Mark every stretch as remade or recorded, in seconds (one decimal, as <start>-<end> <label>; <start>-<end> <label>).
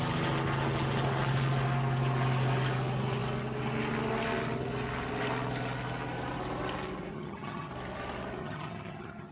0.0-7.1 recorded; 7.1-7.7 remade; 7.7-8.4 recorded; 8.4-9.3 remade